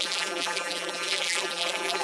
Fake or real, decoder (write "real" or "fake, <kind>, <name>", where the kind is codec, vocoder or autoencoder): fake, vocoder, BigVGAN v2